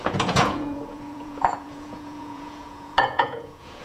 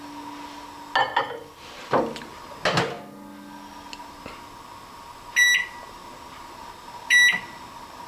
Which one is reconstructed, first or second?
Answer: first